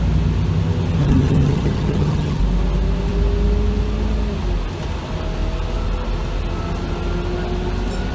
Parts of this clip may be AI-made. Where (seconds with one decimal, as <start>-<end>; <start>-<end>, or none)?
1.0-2.4